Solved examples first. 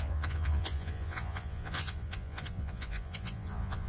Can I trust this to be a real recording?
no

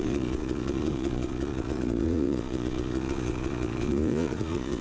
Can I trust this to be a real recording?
no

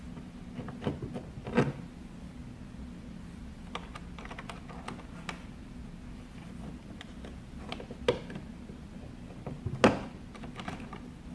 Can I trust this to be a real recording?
yes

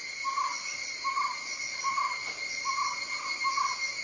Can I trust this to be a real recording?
yes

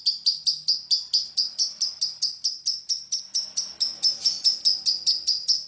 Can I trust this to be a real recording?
yes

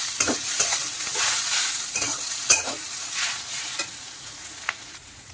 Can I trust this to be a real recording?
no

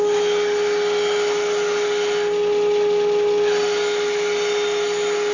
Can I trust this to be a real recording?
yes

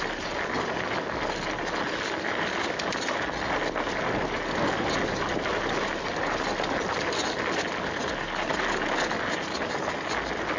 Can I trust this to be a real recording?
yes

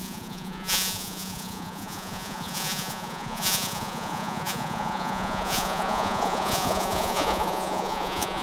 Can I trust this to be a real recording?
no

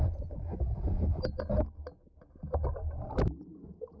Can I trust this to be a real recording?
yes